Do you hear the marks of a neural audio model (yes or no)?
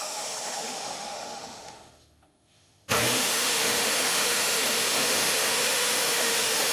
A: yes